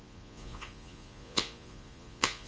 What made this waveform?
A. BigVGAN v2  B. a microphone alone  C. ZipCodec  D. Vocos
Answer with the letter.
D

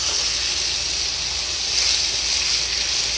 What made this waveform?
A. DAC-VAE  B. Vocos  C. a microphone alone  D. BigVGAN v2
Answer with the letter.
C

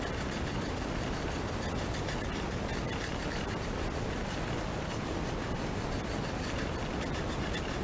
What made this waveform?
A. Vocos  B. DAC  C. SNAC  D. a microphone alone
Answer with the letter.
D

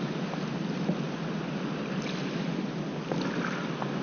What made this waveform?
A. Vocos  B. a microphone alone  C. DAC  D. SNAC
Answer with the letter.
B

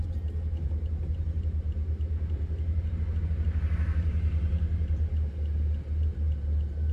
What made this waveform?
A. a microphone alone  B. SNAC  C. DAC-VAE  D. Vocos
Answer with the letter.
A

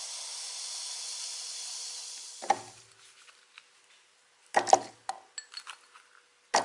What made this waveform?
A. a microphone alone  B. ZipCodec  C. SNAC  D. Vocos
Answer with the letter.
A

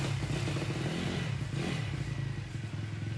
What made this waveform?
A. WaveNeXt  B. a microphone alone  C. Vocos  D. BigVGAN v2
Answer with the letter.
B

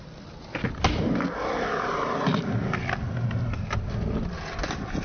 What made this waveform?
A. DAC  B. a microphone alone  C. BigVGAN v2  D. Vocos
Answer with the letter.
B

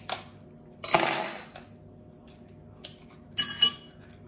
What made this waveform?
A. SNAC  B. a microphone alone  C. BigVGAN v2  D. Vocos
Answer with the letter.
B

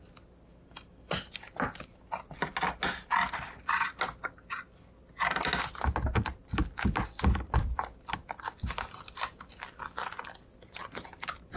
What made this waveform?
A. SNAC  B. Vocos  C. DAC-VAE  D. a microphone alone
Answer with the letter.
D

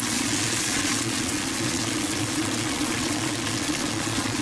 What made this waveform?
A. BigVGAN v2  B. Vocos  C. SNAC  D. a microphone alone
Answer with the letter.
B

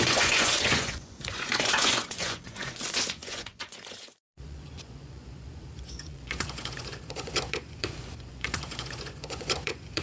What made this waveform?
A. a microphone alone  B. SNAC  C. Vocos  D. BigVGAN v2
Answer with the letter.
C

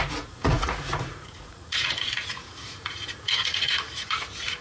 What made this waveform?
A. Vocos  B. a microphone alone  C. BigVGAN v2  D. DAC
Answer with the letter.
A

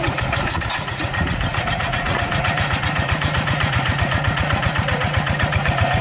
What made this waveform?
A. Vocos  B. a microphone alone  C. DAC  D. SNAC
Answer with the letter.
A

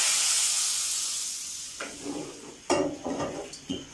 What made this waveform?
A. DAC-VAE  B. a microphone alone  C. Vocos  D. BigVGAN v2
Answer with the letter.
C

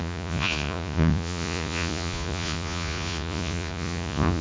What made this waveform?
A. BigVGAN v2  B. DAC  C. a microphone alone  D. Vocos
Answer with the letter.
D